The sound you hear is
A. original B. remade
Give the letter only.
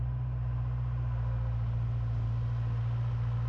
A